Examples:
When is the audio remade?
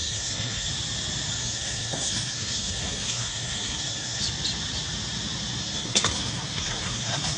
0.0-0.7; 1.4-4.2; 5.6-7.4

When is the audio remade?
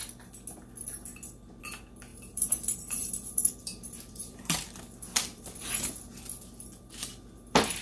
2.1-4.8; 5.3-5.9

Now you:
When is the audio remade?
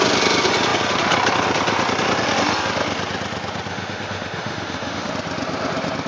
3.7-5.1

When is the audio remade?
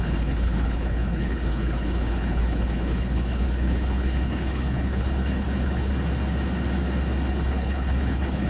0.0-5.9; 7.3-8.5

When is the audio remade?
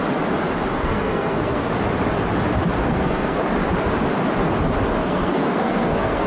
0.7-1.6; 2.8-3.4; 5.0-6.3